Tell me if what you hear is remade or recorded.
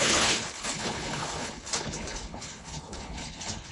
remade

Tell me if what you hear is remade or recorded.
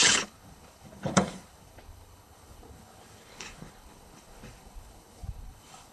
remade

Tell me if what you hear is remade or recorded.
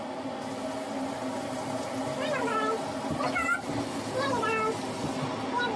recorded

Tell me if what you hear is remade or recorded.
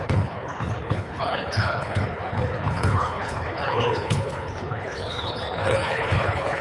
remade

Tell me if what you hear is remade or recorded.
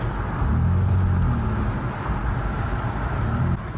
recorded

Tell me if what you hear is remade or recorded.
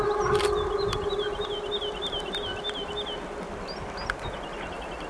recorded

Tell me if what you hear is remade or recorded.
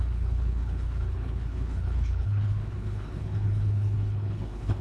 remade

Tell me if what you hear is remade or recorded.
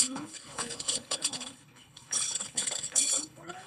remade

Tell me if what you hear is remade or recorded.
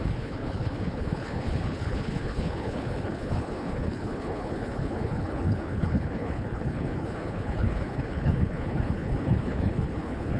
remade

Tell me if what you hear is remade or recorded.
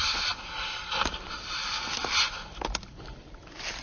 recorded